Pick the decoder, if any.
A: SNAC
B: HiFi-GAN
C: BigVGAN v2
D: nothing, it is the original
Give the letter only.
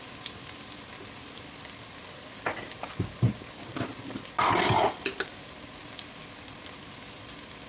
D